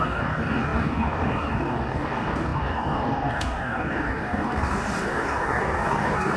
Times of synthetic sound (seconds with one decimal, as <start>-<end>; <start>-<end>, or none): 0.0-6.4